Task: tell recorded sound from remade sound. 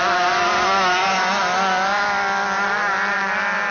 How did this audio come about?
recorded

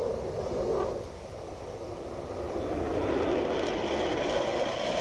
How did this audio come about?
recorded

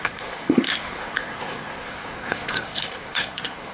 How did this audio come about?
remade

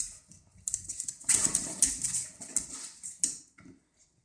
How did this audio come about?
recorded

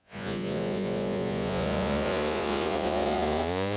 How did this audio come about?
remade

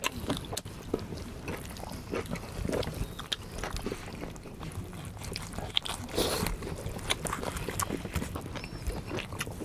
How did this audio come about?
recorded